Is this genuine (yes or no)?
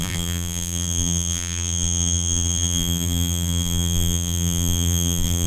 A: no